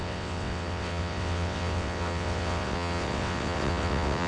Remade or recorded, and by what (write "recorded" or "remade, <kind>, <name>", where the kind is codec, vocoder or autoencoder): remade, vocoder, WaveNeXt